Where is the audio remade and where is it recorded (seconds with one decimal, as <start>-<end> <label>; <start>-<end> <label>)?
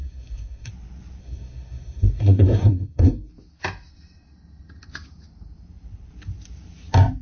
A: 0.0-0.7 remade; 0.7-1.2 recorded; 1.2-3.3 remade; 3.3-7.2 recorded